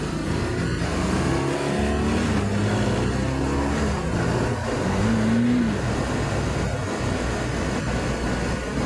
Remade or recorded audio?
recorded